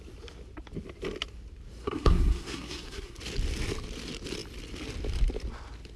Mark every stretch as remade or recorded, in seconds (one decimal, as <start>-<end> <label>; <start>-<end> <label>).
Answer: 0.0-1.8 recorded; 1.8-3.2 remade; 3.2-6.0 recorded